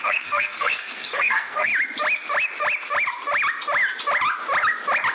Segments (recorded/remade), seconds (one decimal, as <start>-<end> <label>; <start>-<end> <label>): 0.0-1.7 remade; 1.7-5.1 recorded